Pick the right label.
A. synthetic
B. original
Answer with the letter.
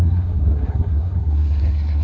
A